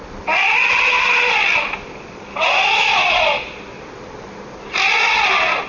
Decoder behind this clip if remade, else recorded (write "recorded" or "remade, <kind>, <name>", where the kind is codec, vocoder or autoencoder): recorded